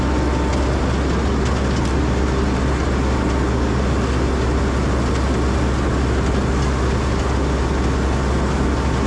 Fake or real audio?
real